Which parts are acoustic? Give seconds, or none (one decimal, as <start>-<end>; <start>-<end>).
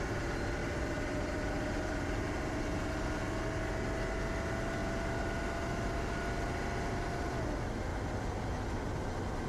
0.0-0.6; 3.2-9.5